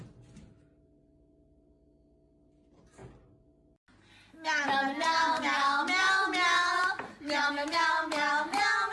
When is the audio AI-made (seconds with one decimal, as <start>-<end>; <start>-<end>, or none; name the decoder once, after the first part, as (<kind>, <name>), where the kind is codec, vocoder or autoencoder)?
6.6-7.5 (vocoder, BigVGAN v2)